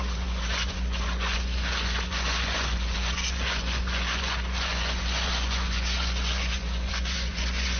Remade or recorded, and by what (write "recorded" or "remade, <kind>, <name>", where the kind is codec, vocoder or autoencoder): remade, vocoder, Vocos